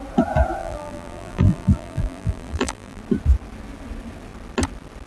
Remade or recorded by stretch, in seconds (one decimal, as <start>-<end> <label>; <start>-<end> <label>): 0.0-0.6 recorded; 0.6-3.0 remade; 3.0-5.1 recorded